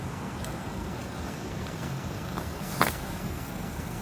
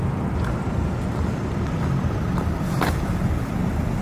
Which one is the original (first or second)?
second